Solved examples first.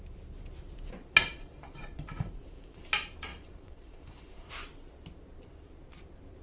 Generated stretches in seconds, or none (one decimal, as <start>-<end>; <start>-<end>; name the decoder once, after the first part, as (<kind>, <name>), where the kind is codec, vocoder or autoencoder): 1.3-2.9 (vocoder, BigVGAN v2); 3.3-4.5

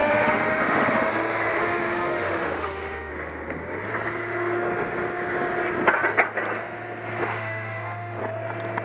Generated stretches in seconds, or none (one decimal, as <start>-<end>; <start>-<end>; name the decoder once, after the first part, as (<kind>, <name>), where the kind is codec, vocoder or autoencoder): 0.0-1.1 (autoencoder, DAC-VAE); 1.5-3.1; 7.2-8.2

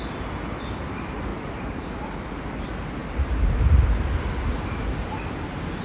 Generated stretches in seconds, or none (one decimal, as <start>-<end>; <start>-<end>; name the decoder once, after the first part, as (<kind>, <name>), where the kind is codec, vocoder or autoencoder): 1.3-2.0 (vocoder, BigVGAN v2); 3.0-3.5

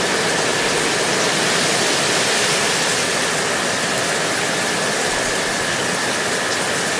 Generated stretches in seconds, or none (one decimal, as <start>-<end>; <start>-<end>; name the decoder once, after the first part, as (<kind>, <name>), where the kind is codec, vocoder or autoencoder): none

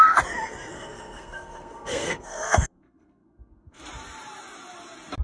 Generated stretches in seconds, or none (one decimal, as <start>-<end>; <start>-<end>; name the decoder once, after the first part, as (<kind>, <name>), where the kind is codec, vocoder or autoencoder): 0.7-3.8 (codec, SNAC)

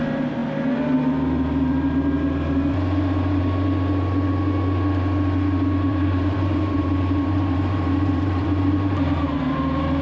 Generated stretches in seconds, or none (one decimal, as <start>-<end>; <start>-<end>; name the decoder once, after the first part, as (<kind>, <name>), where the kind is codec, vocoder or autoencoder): 5.9-9.2 (vocoder, BigVGAN v2)

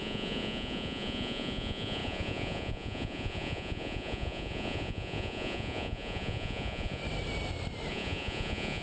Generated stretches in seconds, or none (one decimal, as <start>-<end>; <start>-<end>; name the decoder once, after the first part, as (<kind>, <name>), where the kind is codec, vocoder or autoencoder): 0.0-7.0 (vocoder, Vocos); 7.9-8.8